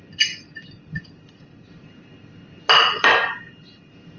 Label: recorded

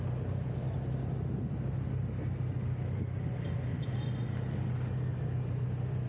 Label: recorded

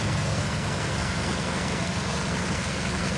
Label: remade